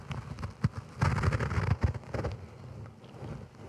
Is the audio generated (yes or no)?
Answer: no